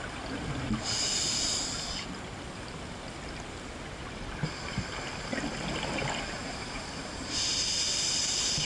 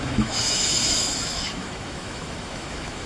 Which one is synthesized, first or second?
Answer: second